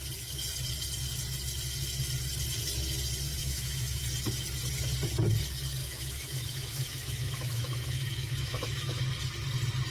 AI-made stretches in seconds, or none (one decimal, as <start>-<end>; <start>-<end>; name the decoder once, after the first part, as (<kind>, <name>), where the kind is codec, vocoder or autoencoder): 3.4-4.0 (autoencoder, DAC-VAE); 5.8-9.0